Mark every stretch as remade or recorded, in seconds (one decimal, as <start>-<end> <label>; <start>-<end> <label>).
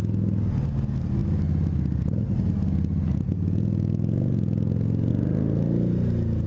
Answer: 0.0-6.5 recorded